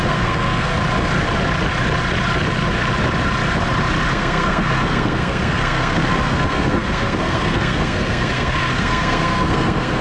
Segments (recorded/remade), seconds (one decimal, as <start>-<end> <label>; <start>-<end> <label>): 0.0-0.7 remade; 0.7-4.1 recorded; 4.1-10.0 remade